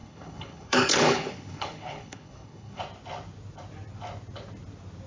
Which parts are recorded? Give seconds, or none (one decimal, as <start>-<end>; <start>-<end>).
2.8-5.1